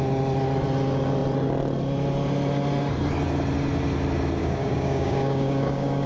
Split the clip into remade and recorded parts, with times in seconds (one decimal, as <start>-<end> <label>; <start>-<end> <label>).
0.0-4.4 recorded; 4.4-6.1 remade